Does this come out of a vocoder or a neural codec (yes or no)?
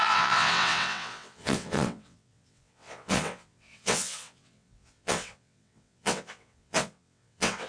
yes